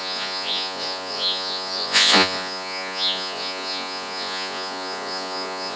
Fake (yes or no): yes